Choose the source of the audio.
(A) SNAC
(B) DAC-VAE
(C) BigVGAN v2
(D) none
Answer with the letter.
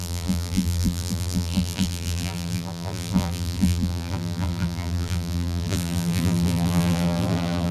C